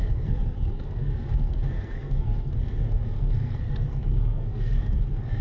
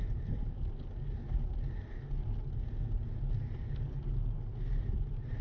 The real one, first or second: second